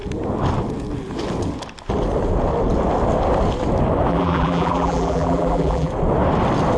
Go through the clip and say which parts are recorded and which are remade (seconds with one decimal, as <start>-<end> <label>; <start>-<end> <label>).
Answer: 0.0-4.1 recorded; 4.1-5.9 remade; 5.9-6.8 recorded